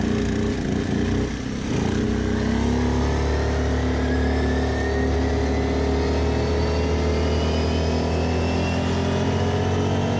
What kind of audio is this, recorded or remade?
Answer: recorded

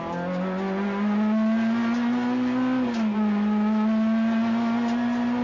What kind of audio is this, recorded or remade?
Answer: recorded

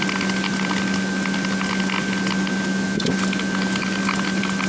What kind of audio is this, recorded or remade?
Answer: recorded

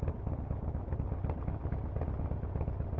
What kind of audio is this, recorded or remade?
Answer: recorded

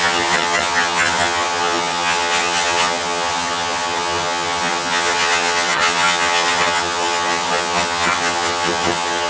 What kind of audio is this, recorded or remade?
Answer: remade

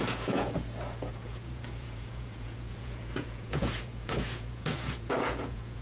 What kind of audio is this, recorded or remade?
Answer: remade